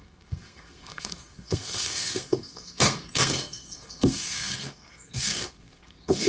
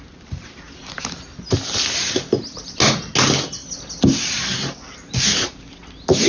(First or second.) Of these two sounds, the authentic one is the second